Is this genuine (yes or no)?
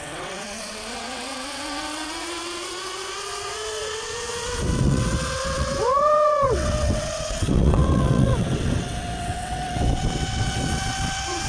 no